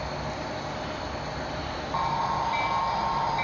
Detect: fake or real real